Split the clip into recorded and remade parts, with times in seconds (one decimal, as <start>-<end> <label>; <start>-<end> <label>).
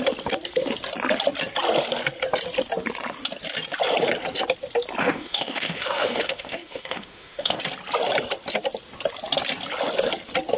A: 0.0-5.0 recorded; 5.0-7.6 remade; 7.6-10.6 recorded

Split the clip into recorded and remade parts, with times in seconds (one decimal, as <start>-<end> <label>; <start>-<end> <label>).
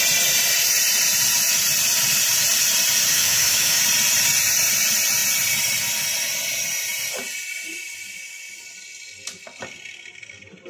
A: 0.0-3.1 recorded; 3.1-3.8 remade; 3.8-10.7 recorded